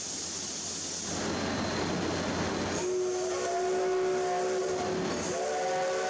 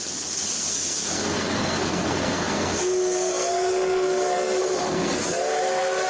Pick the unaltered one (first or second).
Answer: first